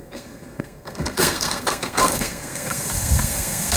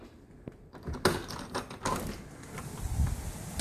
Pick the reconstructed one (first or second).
first